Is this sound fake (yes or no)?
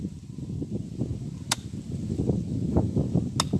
no